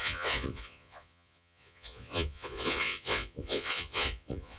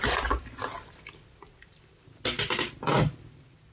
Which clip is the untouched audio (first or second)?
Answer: second